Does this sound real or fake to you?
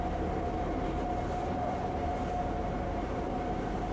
real